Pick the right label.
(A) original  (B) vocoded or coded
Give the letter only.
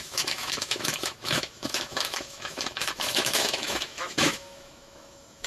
B